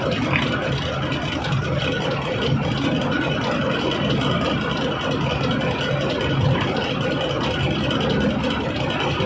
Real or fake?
real